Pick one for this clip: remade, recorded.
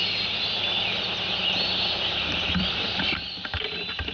recorded